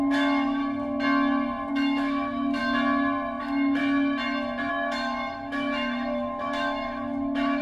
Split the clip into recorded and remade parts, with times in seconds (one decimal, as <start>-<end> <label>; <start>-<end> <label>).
0.0-0.6 remade; 0.6-1.7 recorded; 1.7-2.6 remade; 2.6-3.4 recorded; 3.4-3.8 remade; 3.8-4.7 recorded; 4.7-7.6 remade